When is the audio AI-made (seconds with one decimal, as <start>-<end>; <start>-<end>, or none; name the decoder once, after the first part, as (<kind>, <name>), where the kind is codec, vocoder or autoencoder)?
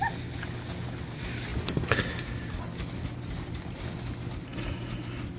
1.5-2.2 (vocoder, BigVGAN v2)